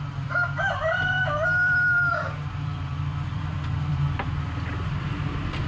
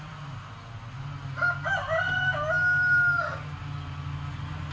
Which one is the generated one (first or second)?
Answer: first